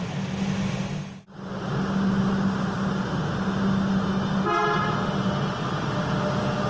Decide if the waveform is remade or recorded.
recorded